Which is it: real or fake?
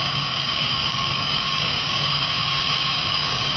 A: fake